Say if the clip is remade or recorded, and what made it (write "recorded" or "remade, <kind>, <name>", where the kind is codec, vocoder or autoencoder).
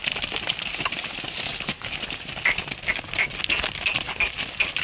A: recorded